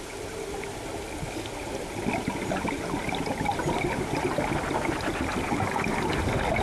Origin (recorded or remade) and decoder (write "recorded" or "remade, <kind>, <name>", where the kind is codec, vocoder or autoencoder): recorded